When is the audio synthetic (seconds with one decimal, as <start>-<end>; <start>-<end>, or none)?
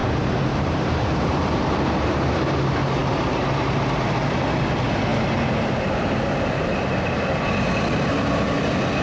0.0-2.2; 3.0-4.2; 5.1-6.9